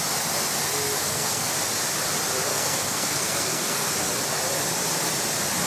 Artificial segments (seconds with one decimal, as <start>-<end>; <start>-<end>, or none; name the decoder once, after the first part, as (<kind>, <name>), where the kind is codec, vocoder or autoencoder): 1.0-1.5 (codec, SNAC); 2.5-3.9